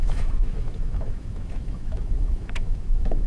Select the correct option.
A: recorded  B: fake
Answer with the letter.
B